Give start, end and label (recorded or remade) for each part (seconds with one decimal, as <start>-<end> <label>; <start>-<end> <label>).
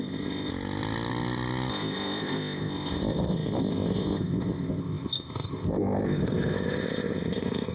0.0-0.5 remade; 0.5-1.7 recorded; 1.7-7.7 remade